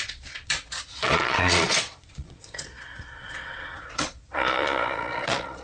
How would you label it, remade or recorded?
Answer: remade